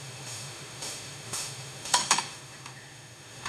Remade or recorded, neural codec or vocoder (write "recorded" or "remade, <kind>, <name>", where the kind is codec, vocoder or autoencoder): remade, autoencoder, DAC-VAE